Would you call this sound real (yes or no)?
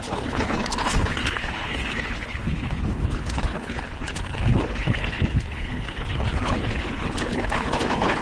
no